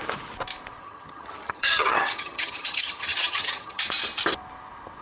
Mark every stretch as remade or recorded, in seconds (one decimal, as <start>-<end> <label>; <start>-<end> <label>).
0.0-0.8 recorded; 0.8-3.8 remade; 3.8-5.0 recorded